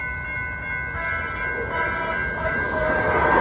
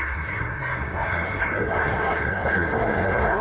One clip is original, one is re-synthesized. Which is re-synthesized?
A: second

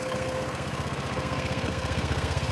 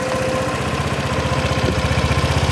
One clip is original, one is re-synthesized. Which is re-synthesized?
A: first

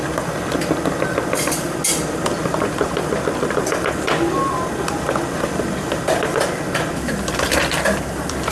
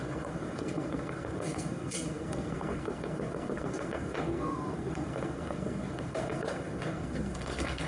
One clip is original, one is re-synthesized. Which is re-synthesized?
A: second